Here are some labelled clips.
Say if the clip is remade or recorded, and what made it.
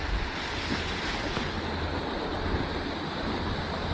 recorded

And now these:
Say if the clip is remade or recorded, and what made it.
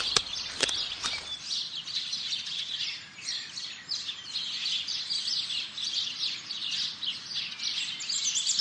recorded